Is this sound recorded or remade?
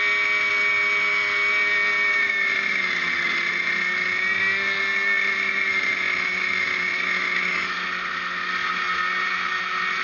recorded